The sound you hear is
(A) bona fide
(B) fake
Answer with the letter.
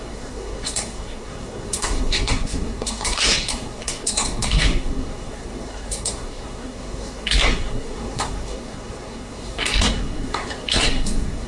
B